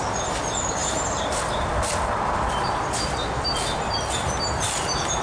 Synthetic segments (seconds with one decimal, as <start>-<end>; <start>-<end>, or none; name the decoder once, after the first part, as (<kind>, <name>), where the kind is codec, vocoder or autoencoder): none